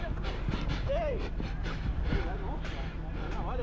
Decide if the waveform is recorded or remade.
recorded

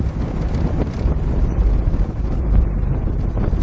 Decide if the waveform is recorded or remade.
remade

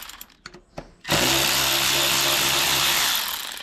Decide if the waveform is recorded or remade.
recorded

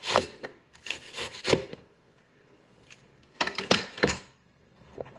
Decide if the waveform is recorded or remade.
remade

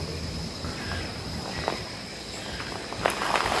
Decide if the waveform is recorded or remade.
recorded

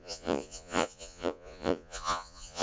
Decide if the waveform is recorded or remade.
remade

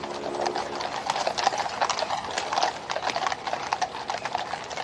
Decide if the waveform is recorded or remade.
recorded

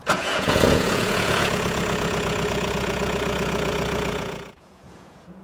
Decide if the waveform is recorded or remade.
remade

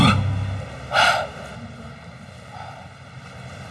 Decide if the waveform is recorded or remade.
recorded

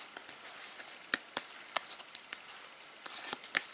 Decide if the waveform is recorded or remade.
recorded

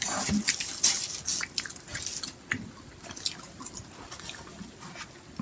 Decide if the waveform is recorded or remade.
recorded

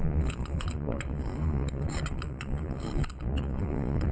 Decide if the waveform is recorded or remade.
remade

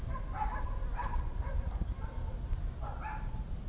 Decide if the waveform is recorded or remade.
recorded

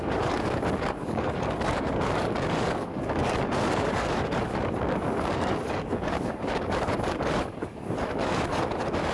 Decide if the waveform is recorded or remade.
remade